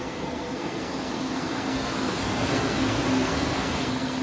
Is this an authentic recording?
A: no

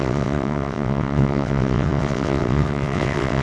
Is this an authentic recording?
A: no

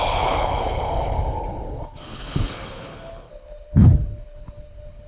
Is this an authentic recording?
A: no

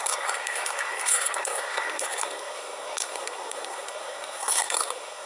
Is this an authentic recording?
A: no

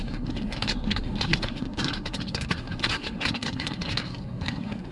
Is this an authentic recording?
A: no